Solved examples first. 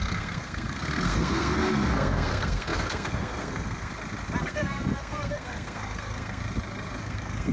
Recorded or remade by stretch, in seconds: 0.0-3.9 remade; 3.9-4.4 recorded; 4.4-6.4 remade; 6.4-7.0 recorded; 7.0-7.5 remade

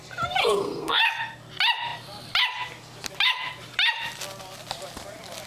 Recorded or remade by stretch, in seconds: 0.0-0.4 recorded; 0.4-1.0 remade; 1.0-5.5 recorded

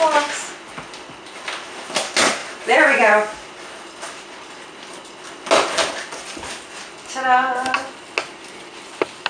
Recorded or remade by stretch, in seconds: 0.0-9.3 recorded

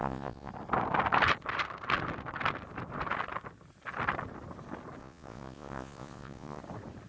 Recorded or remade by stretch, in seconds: 0.0-0.5 remade; 0.5-5.0 recorded; 5.0-6.6 remade; 6.6-7.1 recorded

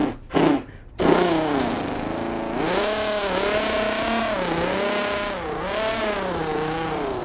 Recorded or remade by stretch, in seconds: 0.0-4.7 recorded; 4.7-6.0 remade; 6.0-6.5 recorded; 6.5-7.2 remade

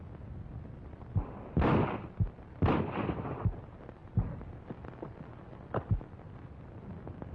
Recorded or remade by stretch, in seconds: 0.0-7.3 recorded

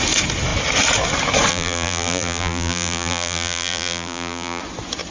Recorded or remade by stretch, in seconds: 0.0-1.5 recorded; 1.5-4.6 remade; 4.6-5.1 recorded

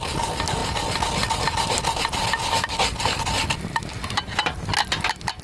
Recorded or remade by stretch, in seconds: 0.0-5.4 recorded